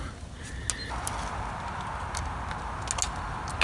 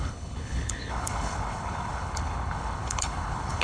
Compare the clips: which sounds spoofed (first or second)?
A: second